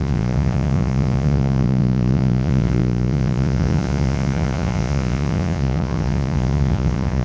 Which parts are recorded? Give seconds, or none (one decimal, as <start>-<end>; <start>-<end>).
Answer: none

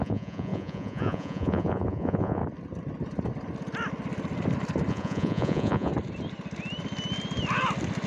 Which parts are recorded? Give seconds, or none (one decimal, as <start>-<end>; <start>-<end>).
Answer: 2.4-4.9; 5.9-8.1

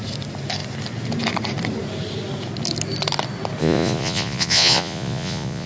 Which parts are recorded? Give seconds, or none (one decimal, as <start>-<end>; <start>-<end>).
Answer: 0.0-3.6